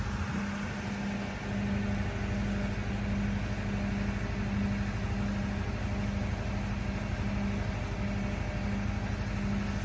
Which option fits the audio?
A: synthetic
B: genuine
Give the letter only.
B